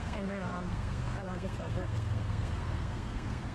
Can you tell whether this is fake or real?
fake